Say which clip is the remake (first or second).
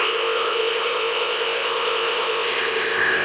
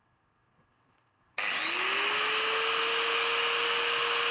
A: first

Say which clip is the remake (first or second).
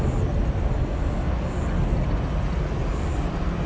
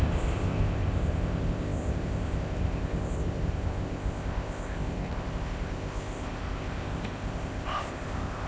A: second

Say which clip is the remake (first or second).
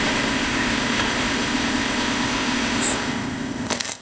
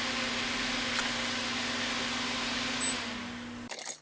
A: first